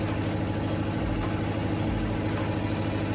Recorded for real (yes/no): yes